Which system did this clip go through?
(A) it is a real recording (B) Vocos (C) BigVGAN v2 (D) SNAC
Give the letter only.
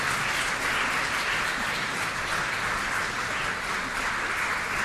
A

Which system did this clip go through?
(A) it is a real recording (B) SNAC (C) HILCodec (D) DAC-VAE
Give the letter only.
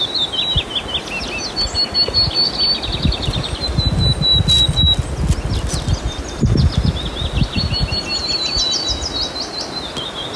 A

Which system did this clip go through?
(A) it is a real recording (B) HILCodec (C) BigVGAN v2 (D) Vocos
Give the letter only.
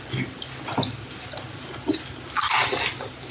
A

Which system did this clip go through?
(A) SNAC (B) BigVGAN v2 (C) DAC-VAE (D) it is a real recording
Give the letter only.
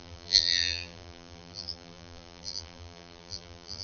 B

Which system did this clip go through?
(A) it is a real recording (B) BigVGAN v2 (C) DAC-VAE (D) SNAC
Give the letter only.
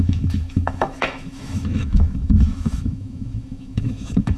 C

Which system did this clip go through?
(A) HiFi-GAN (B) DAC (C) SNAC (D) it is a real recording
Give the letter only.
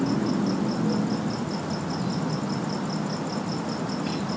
D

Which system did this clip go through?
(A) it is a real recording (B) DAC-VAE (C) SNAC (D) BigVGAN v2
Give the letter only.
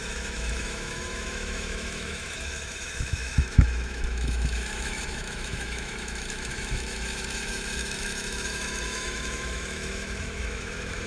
B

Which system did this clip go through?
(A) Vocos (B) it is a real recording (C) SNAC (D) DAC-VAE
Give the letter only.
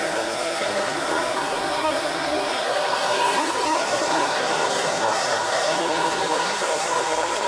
C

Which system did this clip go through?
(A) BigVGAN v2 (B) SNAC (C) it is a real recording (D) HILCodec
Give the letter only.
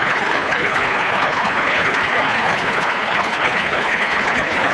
D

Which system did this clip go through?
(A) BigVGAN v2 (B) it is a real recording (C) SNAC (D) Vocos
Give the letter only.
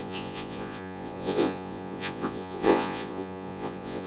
D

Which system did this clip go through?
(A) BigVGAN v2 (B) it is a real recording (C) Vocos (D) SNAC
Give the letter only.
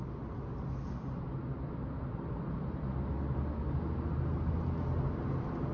B